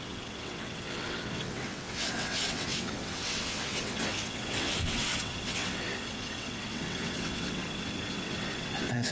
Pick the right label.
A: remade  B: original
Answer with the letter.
A